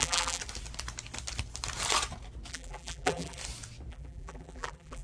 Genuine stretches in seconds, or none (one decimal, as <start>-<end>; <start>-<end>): 0.4-2.5; 3.4-3.9